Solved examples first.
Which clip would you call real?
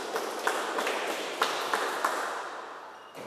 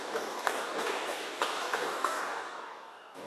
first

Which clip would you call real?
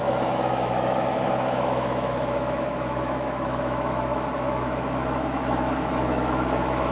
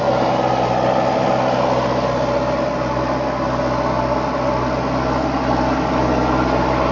second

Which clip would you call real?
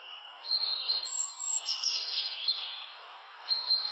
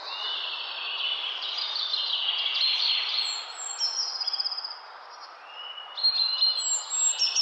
second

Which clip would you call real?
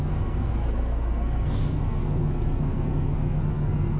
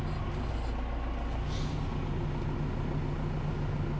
second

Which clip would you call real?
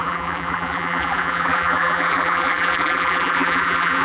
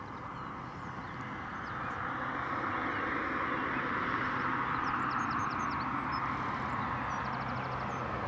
second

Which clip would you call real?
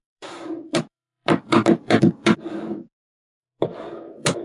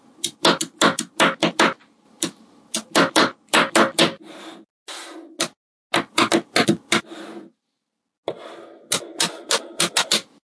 second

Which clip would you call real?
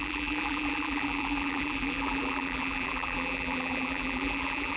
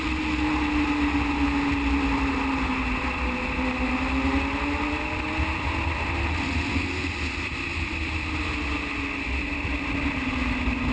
second